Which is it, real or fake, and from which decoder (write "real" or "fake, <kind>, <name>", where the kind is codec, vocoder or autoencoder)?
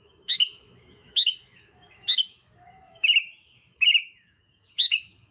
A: fake, autoencoder, DAC-VAE